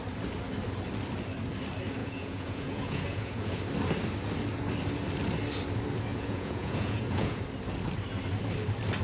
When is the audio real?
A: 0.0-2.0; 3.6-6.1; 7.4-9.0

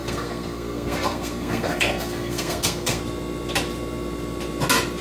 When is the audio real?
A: 3.0-5.0

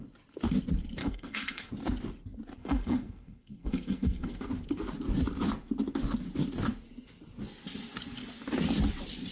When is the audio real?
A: 0.0-1.0; 1.7-2.6; 4.5-9.3

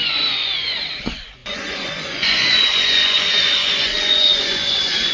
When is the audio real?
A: none

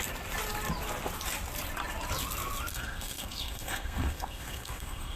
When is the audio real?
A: 0.0-2.7

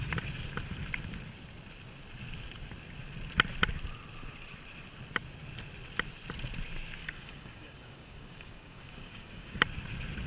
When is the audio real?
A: 0.0-7.0; 9.6-10.3